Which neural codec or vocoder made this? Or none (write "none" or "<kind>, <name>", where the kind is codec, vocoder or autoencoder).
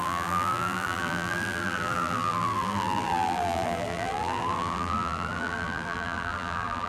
vocoder, BigVGAN v2